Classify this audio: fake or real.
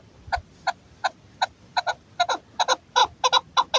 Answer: real